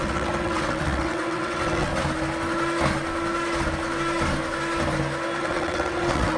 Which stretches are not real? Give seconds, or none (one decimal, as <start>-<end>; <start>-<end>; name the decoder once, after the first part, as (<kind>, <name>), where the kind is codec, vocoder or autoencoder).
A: 0.0-1.9 (vocoder, WaveNeXt); 5.4-6.4